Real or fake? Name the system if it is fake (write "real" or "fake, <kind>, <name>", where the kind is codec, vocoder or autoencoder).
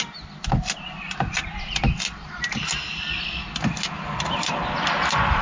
real